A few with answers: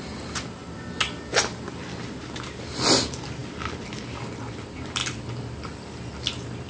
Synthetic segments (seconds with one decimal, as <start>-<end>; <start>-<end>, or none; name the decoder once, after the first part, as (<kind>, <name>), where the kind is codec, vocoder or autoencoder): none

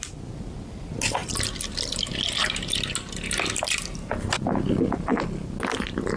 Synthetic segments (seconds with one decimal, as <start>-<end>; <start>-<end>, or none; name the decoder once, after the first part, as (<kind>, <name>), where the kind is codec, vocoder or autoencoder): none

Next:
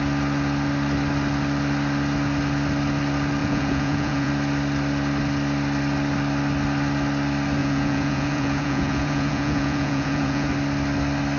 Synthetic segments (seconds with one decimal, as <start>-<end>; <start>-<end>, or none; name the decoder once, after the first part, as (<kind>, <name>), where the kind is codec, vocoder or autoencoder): 3.4-4.3 (vocoder, Vocos); 7.6-10.5

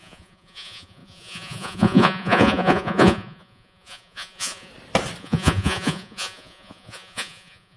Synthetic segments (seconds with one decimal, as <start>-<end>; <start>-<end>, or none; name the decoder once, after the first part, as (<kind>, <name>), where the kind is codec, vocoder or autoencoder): 0.0-4.7 (vocoder, Vocos); 5.2-7.8